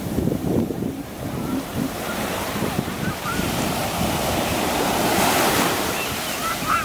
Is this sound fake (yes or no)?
yes